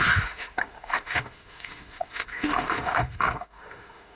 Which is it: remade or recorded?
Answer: remade